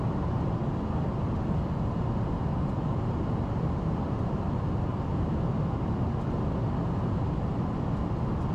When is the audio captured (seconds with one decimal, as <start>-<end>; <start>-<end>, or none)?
0.0-8.5

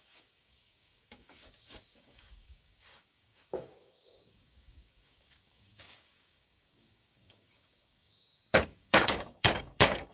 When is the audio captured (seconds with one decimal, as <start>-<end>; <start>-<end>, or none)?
none

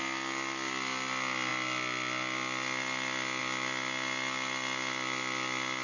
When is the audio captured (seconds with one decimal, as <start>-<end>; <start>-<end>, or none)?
0.0-5.8

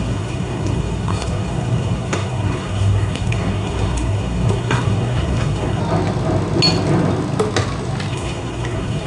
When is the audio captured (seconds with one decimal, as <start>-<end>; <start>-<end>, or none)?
5.8-8.1

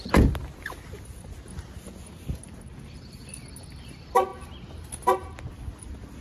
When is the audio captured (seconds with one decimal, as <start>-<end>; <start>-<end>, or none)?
0.0-6.2

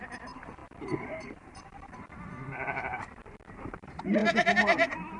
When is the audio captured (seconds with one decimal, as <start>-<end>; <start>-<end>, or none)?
none

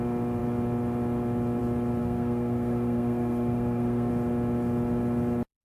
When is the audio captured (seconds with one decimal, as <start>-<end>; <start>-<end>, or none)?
0.0-2.0; 4.1-5.6

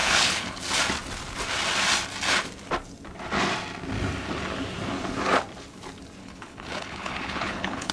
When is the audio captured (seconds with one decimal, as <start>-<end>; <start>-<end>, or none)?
0.6-6.2